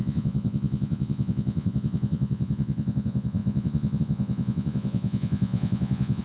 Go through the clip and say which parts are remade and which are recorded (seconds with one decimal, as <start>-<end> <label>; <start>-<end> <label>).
0.0-6.2 remade